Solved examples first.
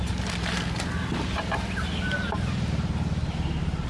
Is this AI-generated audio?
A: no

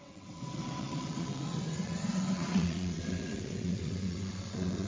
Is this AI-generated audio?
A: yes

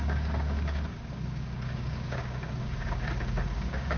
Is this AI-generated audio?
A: yes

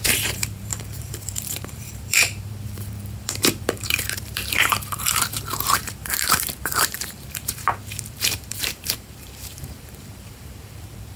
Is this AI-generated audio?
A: yes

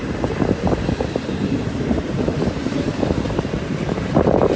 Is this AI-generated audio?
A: yes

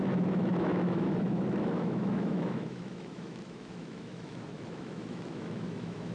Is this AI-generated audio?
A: yes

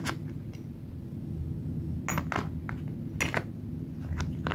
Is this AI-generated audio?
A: no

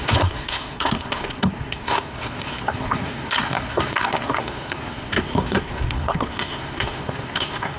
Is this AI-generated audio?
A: yes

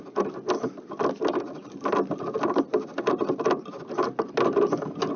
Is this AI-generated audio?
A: no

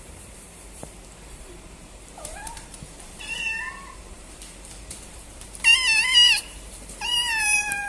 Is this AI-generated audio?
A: yes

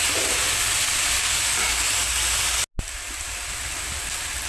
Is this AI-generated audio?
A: no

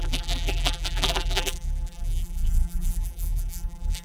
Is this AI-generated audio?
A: yes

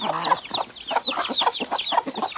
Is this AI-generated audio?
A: no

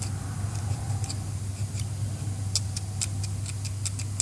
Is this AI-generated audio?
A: no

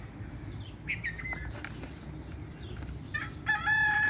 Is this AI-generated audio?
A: no